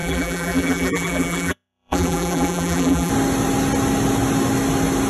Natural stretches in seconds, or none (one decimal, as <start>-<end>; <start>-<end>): 3.1-5.1

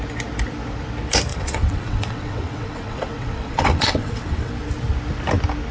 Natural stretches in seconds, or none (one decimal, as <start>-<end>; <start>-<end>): 0.0-1.3; 4.5-5.7